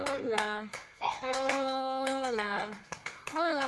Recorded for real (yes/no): no